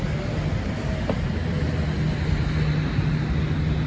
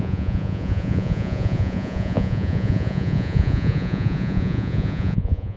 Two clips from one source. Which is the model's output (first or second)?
second